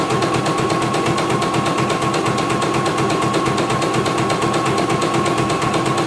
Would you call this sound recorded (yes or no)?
yes